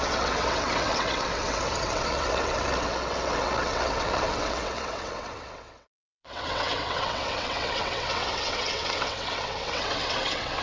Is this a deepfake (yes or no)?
yes